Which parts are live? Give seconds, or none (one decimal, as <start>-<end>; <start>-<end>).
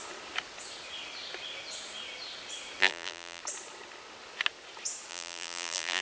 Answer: 0.0-2.8; 3.4-5.1